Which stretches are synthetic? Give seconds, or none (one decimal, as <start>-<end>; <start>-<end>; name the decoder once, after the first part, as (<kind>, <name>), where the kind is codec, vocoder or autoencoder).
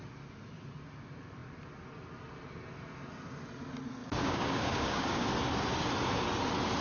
4.0-5.3 (codec, DAC)